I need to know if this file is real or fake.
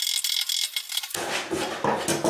real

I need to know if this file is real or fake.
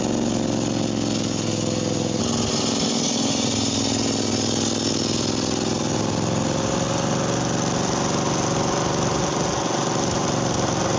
real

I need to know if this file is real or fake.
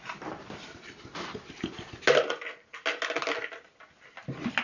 real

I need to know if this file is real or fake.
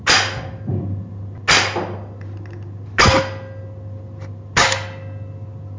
real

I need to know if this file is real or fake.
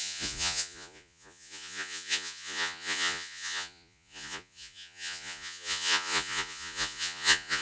fake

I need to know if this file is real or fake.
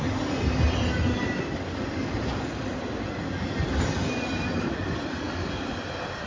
real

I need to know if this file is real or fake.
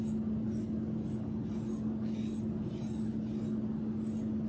real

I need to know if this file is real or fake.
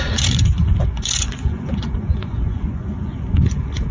fake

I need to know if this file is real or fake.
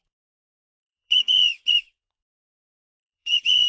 fake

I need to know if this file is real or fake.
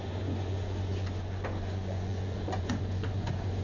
fake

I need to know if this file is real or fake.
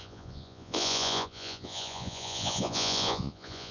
fake